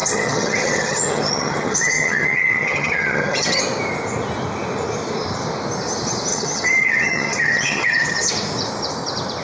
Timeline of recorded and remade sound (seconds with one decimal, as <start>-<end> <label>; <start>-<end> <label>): 0.0-3.6 remade; 3.6-6.3 recorded; 6.3-8.3 remade; 8.3-9.4 recorded